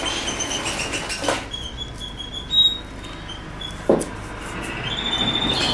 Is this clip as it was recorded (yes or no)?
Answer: yes